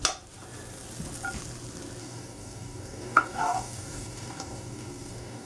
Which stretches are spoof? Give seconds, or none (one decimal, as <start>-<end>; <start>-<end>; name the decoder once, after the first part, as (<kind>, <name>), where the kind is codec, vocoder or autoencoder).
2.0-5.5 (codec, DAC)